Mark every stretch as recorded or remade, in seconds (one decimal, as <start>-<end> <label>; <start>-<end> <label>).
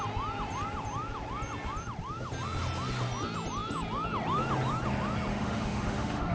0.0-5.3 recorded; 5.3-6.3 remade